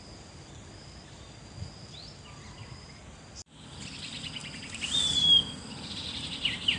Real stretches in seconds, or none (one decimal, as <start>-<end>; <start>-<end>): 0.0-2.6; 3.4-6.8